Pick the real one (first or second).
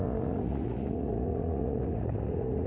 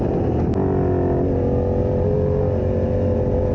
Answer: second